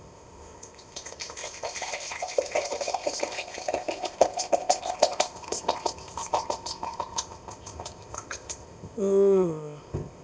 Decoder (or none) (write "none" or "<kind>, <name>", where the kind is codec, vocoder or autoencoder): codec, ZipCodec